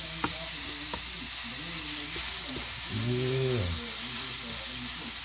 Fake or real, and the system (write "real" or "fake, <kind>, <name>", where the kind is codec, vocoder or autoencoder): real